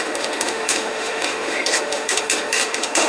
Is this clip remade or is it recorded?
remade